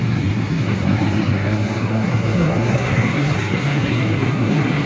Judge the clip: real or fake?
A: fake